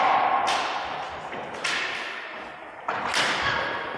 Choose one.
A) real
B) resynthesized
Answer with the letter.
A